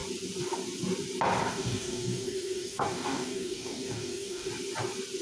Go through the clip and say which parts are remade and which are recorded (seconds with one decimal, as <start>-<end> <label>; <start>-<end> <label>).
0.0-1.4 recorded; 1.4-4.5 remade; 4.5-5.2 recorded